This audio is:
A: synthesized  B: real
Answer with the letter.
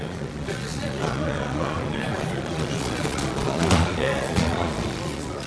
A